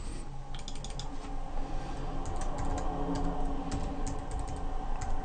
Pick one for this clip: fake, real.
real